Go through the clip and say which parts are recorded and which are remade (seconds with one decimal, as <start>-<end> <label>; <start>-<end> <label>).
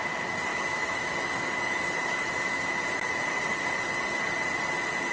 0.0-0.5 recorded; 0.5-3.6 remade; 3.6-5.1 recorded